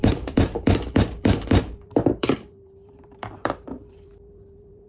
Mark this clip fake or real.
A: fake